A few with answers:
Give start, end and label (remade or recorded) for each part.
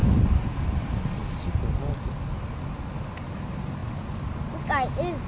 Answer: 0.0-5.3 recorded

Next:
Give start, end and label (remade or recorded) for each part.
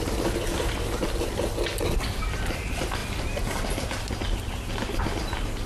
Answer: 0.0-5.7 recorded